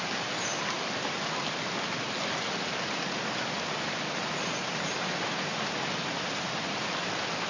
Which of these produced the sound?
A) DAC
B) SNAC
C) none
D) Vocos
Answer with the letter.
C